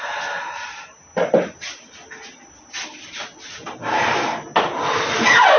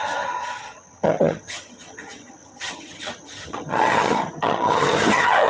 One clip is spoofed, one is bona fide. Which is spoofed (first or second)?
second